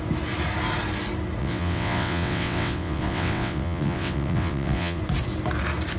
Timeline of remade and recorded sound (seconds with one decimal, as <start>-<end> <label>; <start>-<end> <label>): 0.0-1.4 recorded; 1.4-5.0 remade; 5.0-6.0 recorded